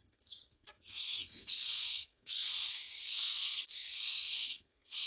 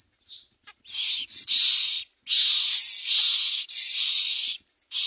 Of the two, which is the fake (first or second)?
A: first